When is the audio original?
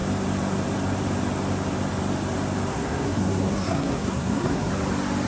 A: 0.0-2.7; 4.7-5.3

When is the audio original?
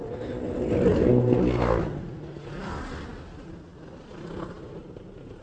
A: 0.0-5.4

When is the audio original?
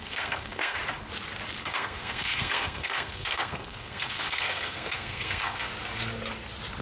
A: 0.8-1.6; 5.7-6.8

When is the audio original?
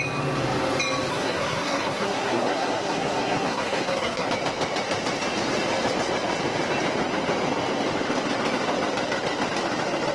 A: 0.0-1.1; 4.3-10.1